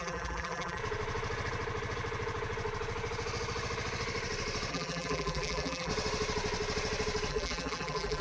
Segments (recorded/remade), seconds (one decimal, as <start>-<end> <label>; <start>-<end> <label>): 0.0-0.8 remade; 0.8-4.7 recorded; 4.7-5.9 remade; 5.9-7.3 recorded; 7.3-8.2 remade